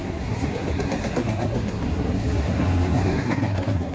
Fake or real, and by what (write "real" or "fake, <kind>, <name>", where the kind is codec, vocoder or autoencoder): fake, codec, SNAC